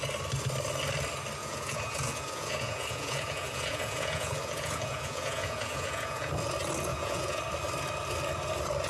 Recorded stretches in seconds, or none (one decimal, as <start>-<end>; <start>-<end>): 0.0-1.4; 6.3-6.9; 7.4-8.9